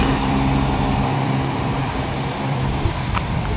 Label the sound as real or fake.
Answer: fake